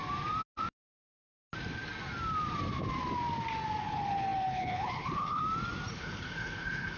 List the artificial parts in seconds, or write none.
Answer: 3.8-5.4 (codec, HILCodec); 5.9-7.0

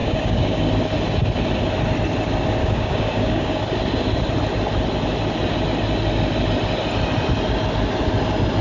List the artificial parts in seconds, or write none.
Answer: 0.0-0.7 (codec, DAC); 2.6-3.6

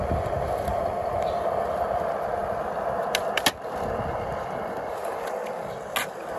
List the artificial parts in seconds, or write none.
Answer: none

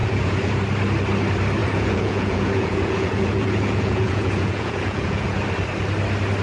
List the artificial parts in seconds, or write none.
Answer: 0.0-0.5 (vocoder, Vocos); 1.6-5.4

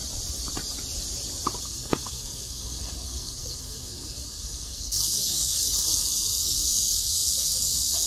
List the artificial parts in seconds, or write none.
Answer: 1.6-8.1 (codec, SNAC)

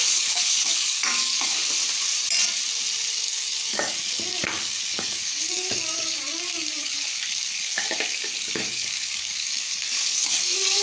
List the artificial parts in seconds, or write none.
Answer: 0.0-1.6 (codec, DAC); 3.1-10.8

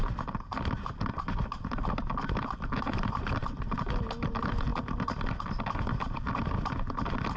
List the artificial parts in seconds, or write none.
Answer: none

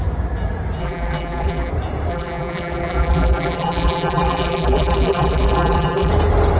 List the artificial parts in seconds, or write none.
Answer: 0.8-1.7 (vocoder, BigVGAN v2); 2.1-6.1